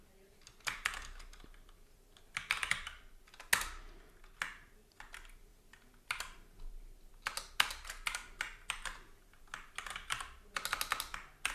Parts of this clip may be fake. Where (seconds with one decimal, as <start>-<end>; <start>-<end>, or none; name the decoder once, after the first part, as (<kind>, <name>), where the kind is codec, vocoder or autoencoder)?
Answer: none